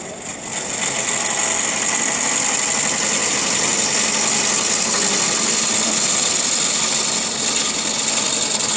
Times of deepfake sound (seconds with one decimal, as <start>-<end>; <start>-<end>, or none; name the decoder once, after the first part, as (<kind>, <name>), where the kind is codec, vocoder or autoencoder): none